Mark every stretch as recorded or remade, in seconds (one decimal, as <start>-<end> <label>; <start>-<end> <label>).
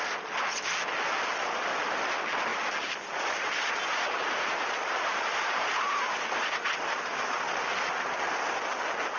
0.0-2.5 recorded; 2.5-4.8 remade; 4.8-9.2 recorded